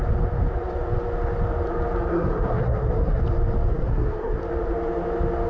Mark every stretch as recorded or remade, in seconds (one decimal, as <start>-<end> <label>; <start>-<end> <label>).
0.0-2.1 recorded; 2.1-3.2 remade; 3.2-3.7 recorded; 3.7-4.4 remade; 4.4-5.5 recorded

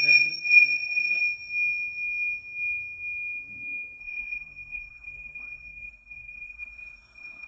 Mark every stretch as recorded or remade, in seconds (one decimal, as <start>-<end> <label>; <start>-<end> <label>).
0.0-1.2 remade; 1.2-4.0 recorded; 4.0-7.5 remade

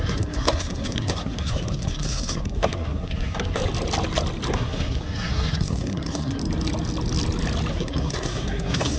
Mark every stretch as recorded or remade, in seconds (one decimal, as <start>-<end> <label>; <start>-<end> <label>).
0.0-3.6 remade; 3.6-4.5 recorded; 4.5-6.4 remade; 6.4-7.7 recorded; 7.7-9.0 remade

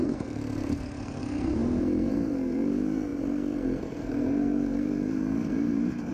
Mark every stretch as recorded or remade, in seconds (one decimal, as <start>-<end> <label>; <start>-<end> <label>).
0.0-6.1 remade